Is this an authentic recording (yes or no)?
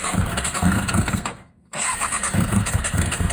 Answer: no